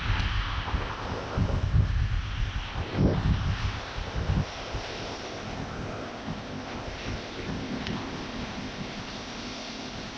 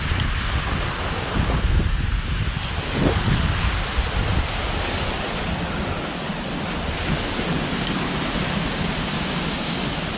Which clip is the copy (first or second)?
first